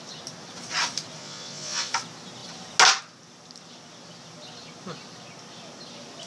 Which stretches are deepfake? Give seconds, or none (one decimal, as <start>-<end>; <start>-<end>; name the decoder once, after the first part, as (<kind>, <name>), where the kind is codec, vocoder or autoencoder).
1.2-1.9 (vocoder, Vocos)